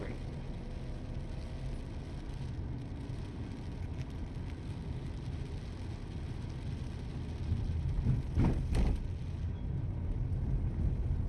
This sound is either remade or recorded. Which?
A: recorded